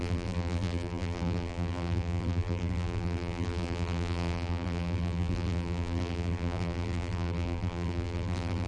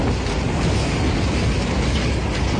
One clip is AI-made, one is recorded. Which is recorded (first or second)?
second